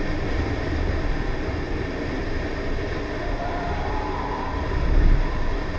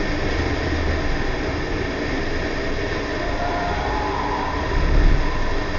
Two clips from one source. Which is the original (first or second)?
second